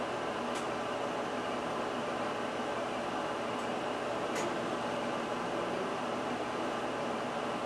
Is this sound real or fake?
real